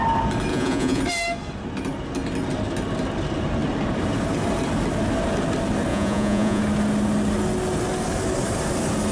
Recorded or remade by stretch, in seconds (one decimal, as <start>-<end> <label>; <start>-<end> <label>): 0.0-0.5 recorded; 0.5-1.0 remade; 1.0-5.9 recorded; 5.9-6.6 remade; 6.6-9.1 recorded